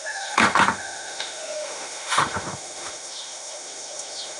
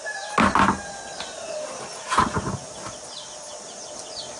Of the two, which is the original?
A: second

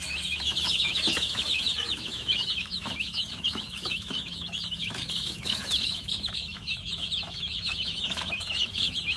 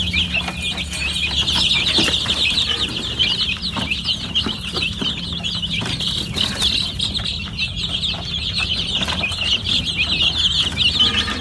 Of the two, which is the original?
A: second